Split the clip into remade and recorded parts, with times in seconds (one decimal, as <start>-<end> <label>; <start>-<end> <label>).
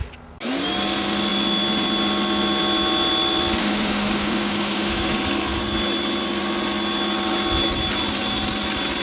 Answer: 0.0-3.6 recorded; 3.6-5.1 remade; 5.1-9.0 recorded